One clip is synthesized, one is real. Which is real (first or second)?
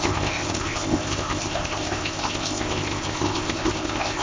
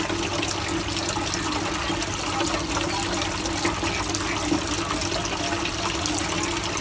second